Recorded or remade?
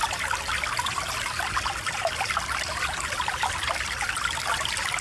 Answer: recorded